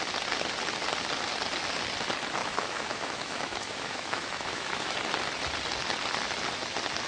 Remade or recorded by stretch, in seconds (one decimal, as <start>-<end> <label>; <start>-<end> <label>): 0.0-2.4 recorded; 2.4-4.9 remade; 4.9-7.1 recorded